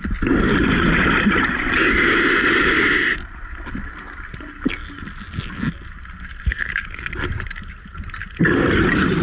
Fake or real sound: real